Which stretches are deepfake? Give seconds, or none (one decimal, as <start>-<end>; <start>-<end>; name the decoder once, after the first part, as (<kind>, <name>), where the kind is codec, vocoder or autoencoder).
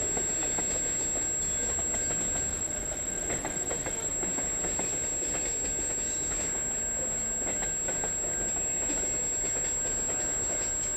2.5-4.1 (vocoder, BigVGAN v2)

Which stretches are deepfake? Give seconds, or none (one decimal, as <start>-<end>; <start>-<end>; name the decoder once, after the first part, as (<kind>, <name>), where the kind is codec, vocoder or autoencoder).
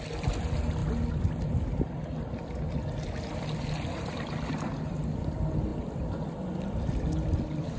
none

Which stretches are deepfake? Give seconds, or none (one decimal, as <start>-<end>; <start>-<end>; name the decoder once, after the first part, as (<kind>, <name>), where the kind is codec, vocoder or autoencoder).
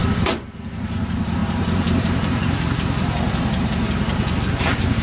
0.0-5.0 (vocoder, BigVGAN v2)